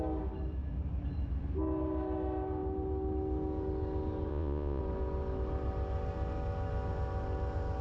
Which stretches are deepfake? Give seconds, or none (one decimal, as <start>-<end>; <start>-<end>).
4.3-4.8